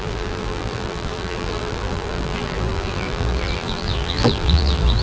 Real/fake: fake